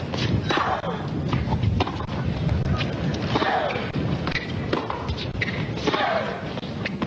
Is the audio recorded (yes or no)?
yes